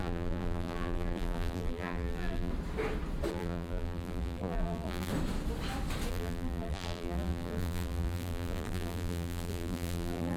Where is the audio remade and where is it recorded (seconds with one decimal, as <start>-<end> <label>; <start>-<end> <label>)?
0.0-2.5 remade; 2.5-3.3 recorded; 3.3-5.1 remade; 5.1-6.1 recorded; 6.1-10.4 remade